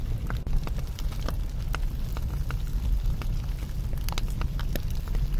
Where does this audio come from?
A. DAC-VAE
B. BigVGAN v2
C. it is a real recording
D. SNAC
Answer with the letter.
C